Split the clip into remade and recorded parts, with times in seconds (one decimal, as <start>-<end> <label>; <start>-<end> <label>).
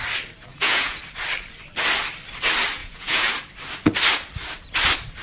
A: 0.0-0.5 recorded; 0.5-1.0 remade; 1.0-2.8 recorded; 2.8-3.3 remade; 3.3-5.2 recorded